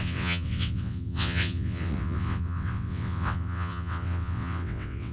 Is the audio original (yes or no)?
no